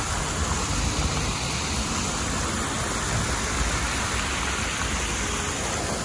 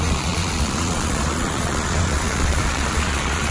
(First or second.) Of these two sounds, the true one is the first